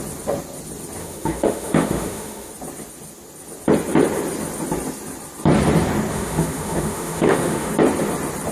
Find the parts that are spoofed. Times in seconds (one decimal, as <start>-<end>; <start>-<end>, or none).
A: 1.0-2.5; 6.1-7.7